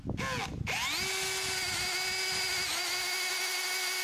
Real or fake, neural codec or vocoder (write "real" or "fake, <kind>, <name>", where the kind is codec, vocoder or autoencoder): real